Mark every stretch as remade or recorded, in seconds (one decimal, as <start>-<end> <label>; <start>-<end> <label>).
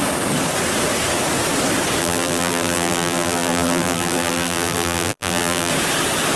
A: 0.0-2.0 recorded; 2.0-5.7 remade; 5.7-6.4 recorded